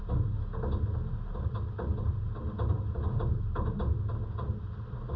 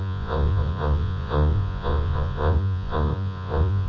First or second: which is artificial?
second